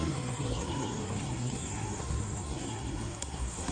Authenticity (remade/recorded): remade